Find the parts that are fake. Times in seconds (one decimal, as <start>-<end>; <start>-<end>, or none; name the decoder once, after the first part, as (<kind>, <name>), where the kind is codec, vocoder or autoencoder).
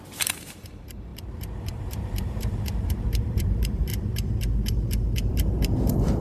0.0-3.9 (vocoder, BigVGAN v2); 5.3-6.2